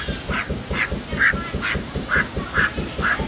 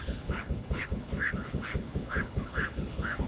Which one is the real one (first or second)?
first